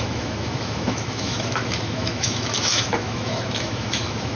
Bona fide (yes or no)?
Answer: no